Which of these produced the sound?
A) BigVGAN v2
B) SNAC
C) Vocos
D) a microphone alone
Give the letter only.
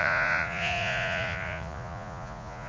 C